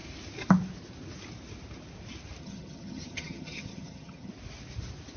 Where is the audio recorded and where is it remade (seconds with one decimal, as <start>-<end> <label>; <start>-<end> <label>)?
0.0-2.4 recorded; 2.4-4.3 remade; 4.3-5.2 recorded